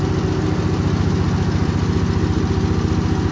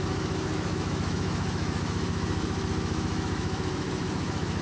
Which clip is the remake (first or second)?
second